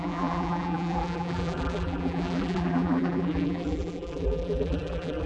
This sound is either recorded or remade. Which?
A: remade